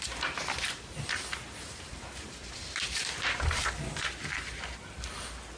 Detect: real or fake real